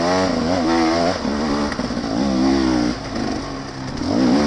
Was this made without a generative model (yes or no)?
yes